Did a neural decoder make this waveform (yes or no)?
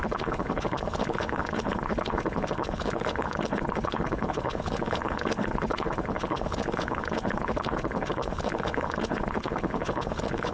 yes